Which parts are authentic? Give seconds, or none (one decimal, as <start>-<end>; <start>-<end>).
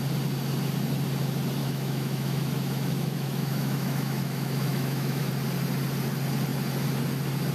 0.0-1.6; 5.3-7.5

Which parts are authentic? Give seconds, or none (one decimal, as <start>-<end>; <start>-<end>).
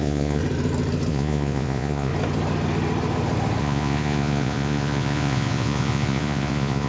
0.4-1.1; 2.1-3.6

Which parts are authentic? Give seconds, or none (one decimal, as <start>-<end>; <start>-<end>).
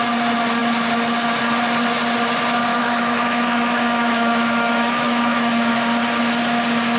0.0-2.7; 5.7-7.0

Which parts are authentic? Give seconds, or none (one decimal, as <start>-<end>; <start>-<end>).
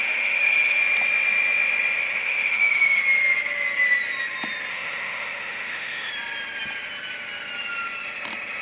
0.8-2.2; 3.0-4.7; 6.1-8.6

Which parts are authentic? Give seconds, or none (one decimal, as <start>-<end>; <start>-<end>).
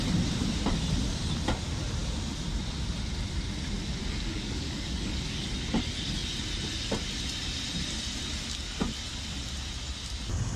0.0-4.0; 5.5-10.6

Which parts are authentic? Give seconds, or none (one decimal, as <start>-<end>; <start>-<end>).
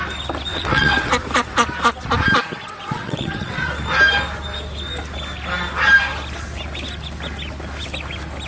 0.0-0.5; 1.1-2.6; 3.7-8.5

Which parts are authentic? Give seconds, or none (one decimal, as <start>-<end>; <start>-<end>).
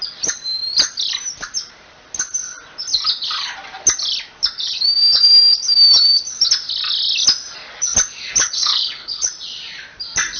0.0-8.3; 9.3-10.4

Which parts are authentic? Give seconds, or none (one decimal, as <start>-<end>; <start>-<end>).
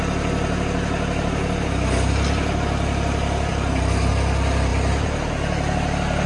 0.0-3.5; 4.1-6.3